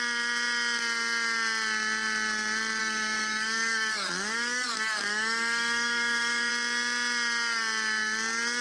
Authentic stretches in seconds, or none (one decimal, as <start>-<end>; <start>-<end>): 0.0-2.8; 6.5-8.6